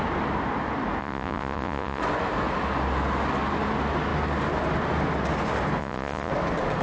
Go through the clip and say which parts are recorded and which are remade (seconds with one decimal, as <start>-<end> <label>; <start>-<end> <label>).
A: 0.0-1.0 recorded; 1.0-2.0 remade; 2.0-5.8 recorded; 5.8-6.3 remade; 6.3-6.8 recorded